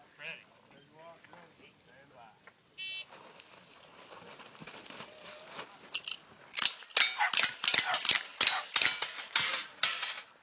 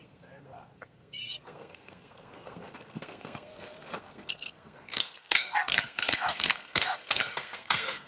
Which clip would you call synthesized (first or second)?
second